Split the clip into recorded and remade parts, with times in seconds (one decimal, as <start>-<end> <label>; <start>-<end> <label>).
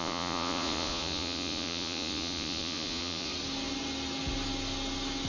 0.0-3.3 remade; 3.3-5.3 recorded